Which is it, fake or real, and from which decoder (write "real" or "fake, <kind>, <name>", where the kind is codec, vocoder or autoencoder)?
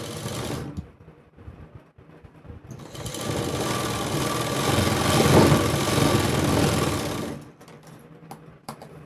real